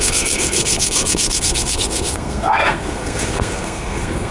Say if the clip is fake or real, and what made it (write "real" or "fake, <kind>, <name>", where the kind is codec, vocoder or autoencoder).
fake, codec, SNAC